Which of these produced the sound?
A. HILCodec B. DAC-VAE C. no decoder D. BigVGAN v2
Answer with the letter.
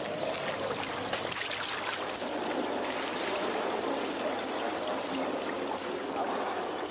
C